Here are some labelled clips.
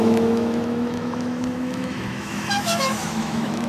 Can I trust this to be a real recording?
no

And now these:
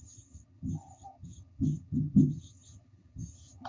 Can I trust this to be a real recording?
no